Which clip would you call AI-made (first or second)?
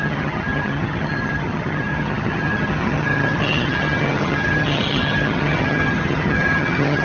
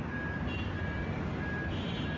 first